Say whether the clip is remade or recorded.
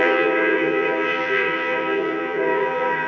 remade